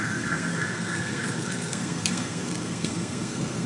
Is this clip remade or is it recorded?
remade